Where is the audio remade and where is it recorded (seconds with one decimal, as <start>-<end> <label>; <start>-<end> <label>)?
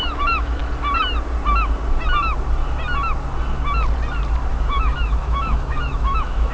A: 0.0-0.6 remade; 0.6-4.5 recorded; 4.5-6.5 remade